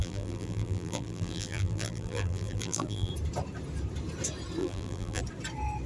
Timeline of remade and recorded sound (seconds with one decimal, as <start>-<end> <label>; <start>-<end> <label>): 0.0-3.1 remade; 3.1-4.6 recorded; 4.6-5.2 remade; 5.2-5.9 recorded